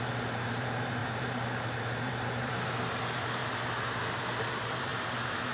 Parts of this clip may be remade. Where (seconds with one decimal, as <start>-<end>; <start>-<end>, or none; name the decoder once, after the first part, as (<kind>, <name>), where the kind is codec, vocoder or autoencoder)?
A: 0.0-3.4 (vocoder, BigVGAN v2); 4.5-4.9